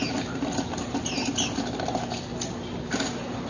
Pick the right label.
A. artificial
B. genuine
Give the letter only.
B